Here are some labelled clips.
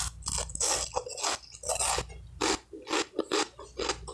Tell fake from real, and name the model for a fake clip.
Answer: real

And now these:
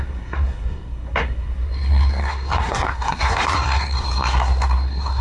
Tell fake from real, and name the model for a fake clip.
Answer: fake, codec, SNAC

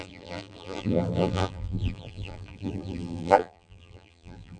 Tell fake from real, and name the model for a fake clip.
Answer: fake, vocoder, BigVGAN v2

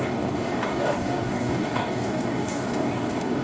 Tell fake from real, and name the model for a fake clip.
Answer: fake, codec, DAC